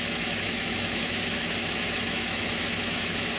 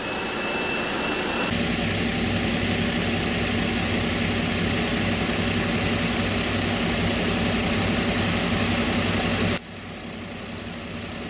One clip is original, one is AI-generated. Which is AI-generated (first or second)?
first